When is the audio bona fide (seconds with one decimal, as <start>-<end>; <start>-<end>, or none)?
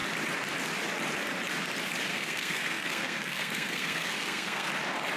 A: 0.0-2.1; 4.7-5.2